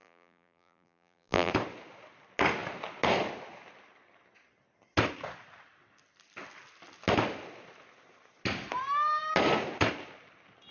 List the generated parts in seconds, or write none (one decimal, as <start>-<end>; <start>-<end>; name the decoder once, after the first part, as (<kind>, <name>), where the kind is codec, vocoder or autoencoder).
0.0-1.5 (vocoder, BigVGAN v2)